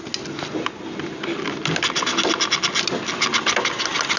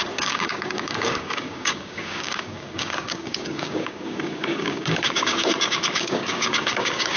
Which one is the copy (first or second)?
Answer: second